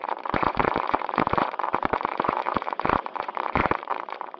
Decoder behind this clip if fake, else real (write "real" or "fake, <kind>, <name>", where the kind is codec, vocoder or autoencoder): fake, vocoder, Vocos